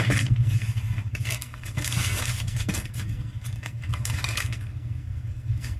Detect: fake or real fake